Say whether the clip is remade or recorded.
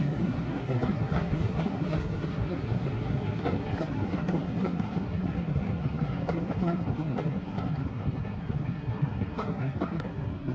remade